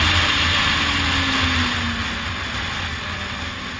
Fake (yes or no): no